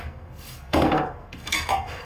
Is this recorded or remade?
remade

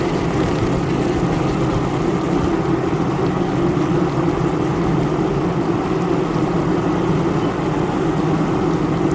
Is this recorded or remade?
recorded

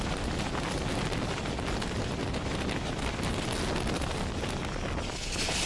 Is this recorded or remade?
recorded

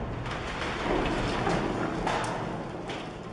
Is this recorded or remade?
recorded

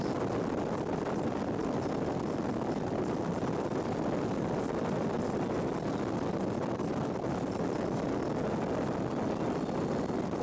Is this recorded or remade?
recorded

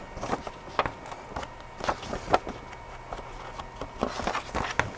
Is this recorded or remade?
recorded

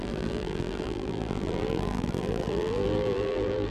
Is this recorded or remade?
remade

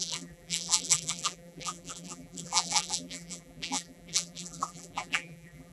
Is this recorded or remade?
remade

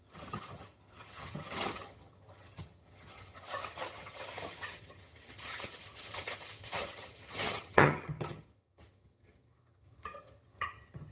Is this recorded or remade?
remade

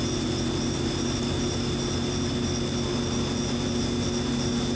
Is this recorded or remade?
recorded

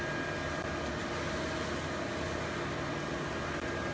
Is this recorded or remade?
recorded